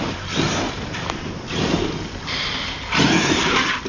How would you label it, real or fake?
real